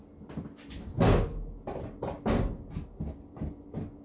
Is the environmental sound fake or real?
real